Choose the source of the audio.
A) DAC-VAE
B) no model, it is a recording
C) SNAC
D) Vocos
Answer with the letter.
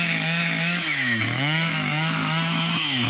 A